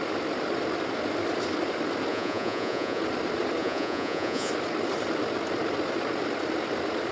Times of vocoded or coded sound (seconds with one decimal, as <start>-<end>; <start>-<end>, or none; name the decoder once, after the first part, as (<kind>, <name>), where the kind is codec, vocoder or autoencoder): 2.1-3.0 (vocoder, Vocos); 3.6-4.5